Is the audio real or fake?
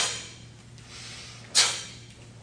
real